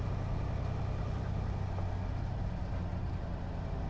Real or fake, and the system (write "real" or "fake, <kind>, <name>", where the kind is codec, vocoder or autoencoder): real